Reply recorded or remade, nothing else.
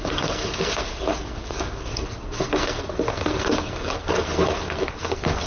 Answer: remade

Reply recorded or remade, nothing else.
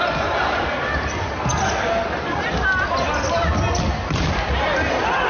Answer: recorded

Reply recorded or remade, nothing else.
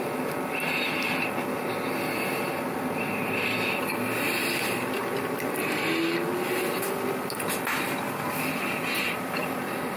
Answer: recorded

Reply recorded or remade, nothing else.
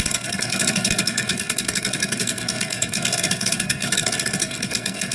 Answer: remade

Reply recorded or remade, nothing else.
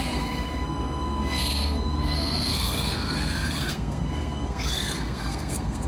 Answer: remade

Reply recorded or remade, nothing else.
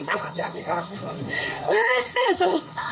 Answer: remade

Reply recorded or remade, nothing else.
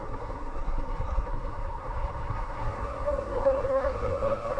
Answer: remade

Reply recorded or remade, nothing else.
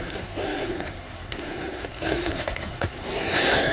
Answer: remade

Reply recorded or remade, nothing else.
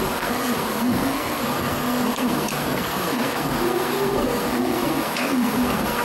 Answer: remade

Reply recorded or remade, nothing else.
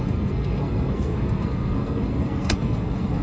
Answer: remade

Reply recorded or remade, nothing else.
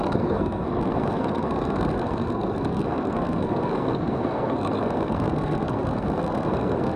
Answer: remade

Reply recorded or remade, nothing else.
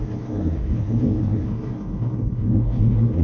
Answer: remade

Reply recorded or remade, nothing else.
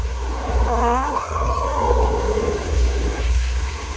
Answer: remade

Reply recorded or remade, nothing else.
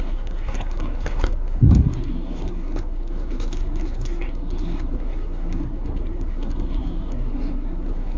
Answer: remade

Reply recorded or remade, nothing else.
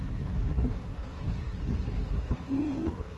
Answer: remade